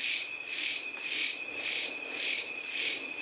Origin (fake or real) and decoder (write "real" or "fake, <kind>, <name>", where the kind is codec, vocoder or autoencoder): real